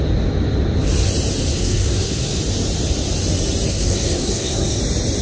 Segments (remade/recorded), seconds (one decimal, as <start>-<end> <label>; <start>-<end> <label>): 0.0-1.5 recorded; 1.5-2.4 remade; 2.4-3.7 recorded; 3.7-4.8 remade; 4.8-5.2 recorded

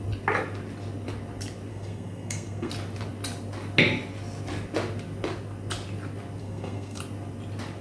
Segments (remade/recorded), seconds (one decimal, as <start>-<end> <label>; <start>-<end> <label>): 0.0-1.7 recorded; 1.7-2.7 remade; 2.7-6.4 recorded; 6.4-7.0 remade; 7.0-7.8 recorded

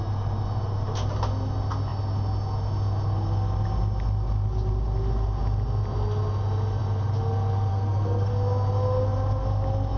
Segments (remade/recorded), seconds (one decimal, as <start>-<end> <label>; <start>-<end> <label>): 0.0-7.7 recorded; 7.7-8.3 remade; 8.3-10.0 recorded

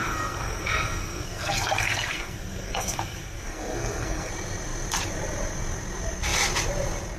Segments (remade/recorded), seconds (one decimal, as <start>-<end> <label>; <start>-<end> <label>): 0.0-4.3 remade; 4.3-7.2 recorded

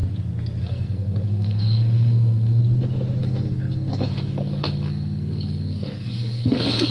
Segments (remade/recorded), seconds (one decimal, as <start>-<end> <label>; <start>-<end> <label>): 0.0-0.6 recorded; 0.6-2.6 remade; 2.6-3.2 recorded; 3.2-6.9 remade

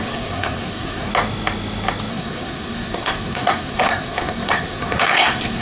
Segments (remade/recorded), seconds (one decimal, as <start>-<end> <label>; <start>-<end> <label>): 0.0-1.1 remade; 1.1-2.1 recorded; 2.1-5.6 remade

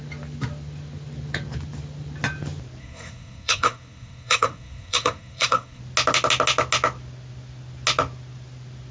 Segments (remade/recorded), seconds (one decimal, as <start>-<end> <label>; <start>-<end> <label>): 0.0-2.8 recorded; 2.8-5.8 remade; 5.8-8.9 recorded

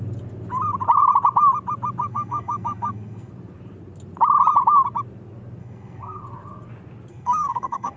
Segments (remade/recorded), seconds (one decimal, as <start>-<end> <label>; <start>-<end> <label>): 0.0-2.0 recorded; 2.0-3.3 remade; 3.3-5.6 recorded; 5.6-6.2 remade; 6.2-7.1 recorded; 7.1-8.0 remade